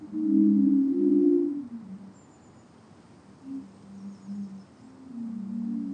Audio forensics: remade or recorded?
recorded